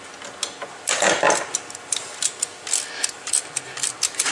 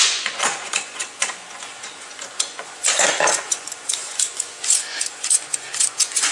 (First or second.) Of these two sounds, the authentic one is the first